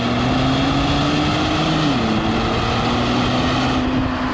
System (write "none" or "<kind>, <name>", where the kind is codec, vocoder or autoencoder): none